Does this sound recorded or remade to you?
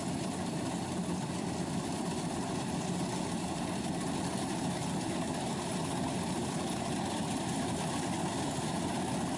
recorded